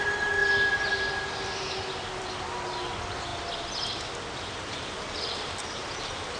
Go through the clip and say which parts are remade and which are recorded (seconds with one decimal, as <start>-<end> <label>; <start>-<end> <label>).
0.0-6.4 recorded